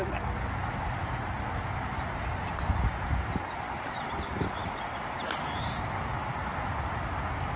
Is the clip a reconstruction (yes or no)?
no